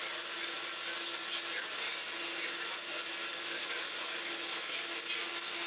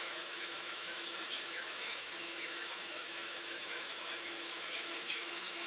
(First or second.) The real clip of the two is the first